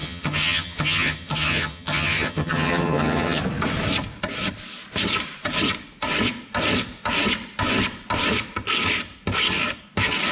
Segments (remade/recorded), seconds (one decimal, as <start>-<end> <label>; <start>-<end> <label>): 0.0-3.4 remade; 3.4-10.3 recorded